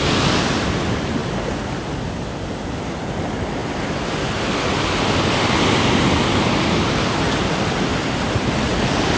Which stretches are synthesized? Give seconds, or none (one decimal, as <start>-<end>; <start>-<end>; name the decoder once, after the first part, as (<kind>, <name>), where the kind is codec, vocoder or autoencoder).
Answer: none